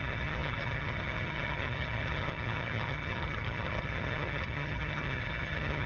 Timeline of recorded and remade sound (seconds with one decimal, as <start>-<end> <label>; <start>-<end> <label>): 0.0-5.9 remade